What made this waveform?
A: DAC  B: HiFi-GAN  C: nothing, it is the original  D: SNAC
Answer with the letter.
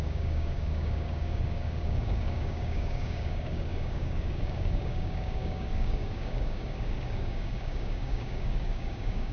A